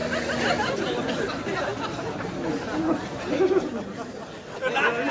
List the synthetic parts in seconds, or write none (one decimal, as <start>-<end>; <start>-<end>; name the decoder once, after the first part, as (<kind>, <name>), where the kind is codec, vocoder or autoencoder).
none